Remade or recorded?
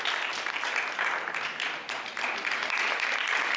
recorded